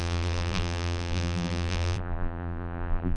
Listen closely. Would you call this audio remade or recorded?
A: remade